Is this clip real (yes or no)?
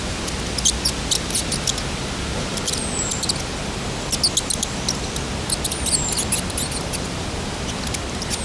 yes